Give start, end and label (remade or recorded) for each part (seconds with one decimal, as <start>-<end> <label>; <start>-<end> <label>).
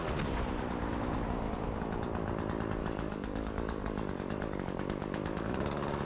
0.0-2.8 recorded; 2.8-6.1 remade